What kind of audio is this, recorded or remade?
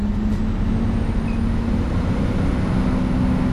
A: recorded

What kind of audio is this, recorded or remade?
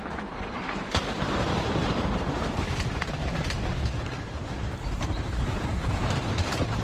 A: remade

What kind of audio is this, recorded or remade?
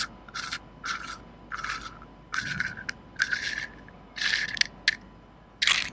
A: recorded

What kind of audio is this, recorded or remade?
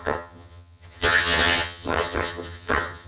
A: remade